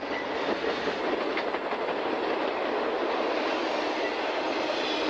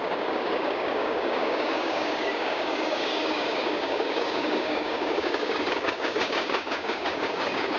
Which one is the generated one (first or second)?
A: second